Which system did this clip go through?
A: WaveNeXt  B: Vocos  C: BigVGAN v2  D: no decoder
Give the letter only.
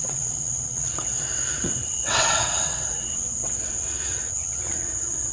A